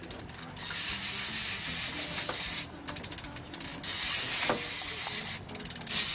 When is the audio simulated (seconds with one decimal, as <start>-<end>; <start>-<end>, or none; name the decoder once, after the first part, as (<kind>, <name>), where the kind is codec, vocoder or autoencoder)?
none

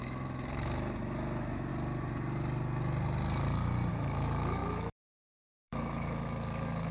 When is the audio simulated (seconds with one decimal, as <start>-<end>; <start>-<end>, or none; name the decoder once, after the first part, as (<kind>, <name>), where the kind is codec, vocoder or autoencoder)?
0.0-1.7 (autoencoder, DAC-VAE); 3.9-6.9